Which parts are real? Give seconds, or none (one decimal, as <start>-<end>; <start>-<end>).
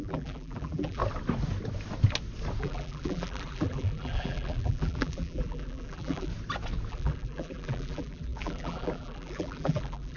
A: 1.0-2.6; 6.3-6.9